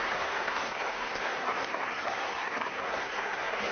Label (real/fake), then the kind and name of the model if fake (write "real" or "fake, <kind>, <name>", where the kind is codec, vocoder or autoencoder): fake, codec, SNAC